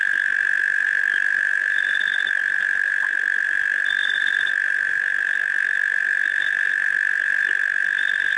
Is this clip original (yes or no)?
yes